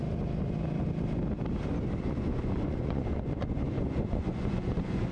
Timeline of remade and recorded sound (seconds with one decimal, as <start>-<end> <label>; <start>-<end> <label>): 0.0-2.0 recorded; 2.0-5.1 remade